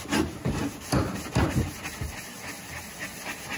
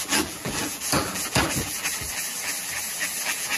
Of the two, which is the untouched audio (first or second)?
first